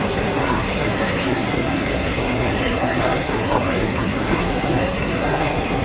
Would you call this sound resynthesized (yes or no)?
yes